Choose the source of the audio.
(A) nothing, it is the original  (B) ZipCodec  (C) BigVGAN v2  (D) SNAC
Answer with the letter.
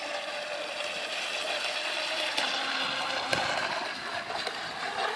A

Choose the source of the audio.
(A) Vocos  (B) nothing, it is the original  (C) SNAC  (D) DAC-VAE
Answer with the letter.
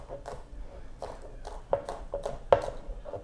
B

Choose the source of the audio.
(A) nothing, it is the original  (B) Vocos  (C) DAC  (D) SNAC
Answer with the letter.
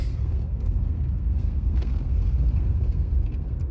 D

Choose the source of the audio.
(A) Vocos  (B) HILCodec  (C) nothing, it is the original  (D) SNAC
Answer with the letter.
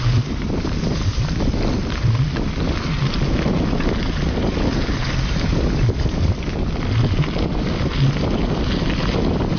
C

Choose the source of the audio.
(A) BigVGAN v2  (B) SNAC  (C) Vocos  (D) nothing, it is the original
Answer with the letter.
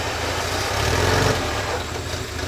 D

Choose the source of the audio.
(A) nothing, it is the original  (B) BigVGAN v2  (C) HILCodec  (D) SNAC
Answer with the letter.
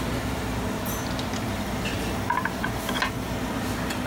A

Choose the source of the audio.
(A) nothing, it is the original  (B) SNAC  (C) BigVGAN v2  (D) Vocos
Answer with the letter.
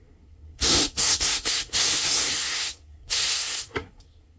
B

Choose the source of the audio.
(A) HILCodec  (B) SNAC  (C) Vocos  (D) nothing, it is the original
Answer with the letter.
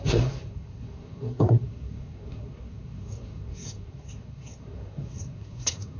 B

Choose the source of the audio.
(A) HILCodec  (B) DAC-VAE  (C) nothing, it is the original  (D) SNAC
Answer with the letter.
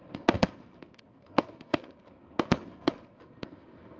D